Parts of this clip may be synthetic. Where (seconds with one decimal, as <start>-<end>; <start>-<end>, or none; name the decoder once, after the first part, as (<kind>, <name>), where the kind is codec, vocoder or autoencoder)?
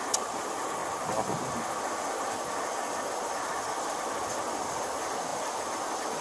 none